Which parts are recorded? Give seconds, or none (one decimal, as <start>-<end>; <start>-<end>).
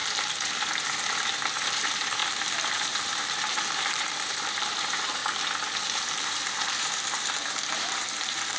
0.0-1.0; 5.2-6.1